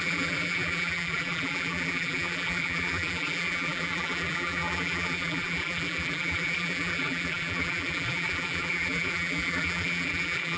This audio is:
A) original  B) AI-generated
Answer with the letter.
B